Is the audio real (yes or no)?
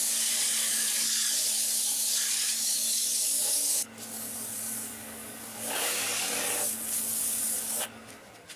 no